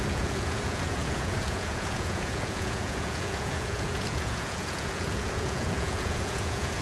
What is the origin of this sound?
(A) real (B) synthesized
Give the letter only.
B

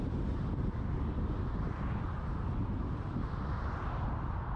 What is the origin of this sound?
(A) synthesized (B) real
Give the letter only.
B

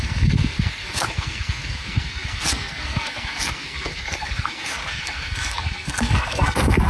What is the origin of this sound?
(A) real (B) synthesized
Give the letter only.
B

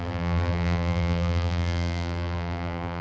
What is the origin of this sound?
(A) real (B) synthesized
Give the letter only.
B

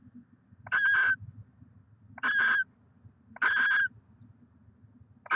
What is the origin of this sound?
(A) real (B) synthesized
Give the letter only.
A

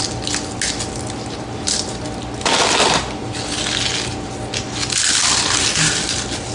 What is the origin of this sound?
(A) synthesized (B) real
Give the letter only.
B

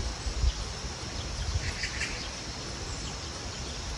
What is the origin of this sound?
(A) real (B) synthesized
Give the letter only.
A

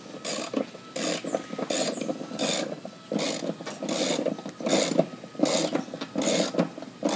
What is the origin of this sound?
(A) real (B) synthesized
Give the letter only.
A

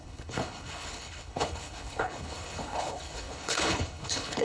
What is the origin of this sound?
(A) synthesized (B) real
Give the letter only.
A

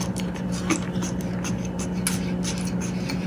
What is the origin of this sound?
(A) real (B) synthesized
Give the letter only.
A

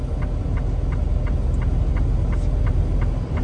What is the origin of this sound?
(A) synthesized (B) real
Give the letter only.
B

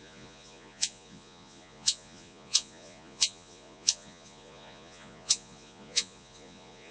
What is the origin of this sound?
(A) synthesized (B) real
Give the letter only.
A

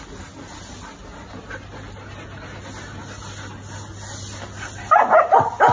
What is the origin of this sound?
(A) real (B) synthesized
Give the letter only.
A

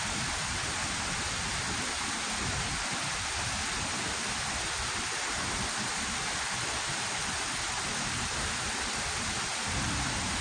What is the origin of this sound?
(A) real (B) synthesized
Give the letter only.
A